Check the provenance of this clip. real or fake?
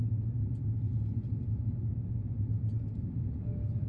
real